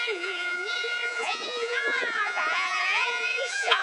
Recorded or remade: remade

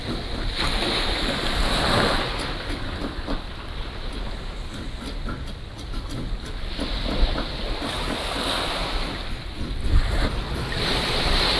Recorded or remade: recorded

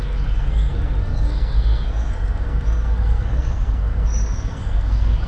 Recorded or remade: remade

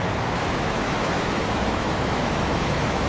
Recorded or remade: remade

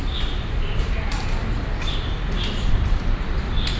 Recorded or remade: recorded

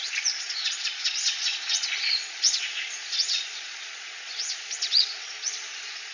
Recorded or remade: remade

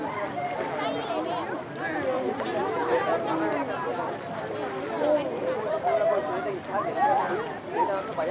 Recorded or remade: recorded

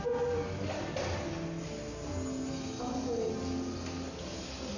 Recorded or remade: recorded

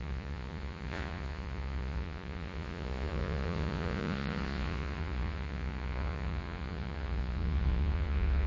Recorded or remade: remade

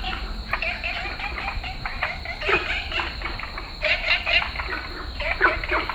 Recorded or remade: recorded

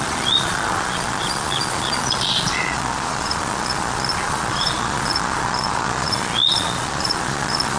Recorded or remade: remade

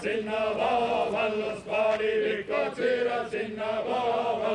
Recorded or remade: recorded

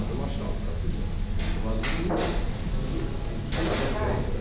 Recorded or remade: recorded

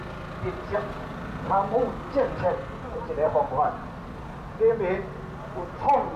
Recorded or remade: recorded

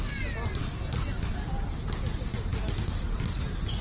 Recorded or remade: recorded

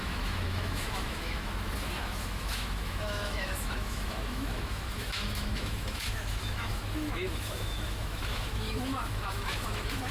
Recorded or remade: remade